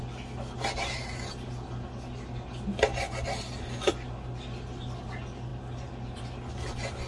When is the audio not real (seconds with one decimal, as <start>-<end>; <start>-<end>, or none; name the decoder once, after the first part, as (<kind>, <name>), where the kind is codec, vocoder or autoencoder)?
none